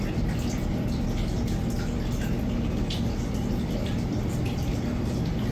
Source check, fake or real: real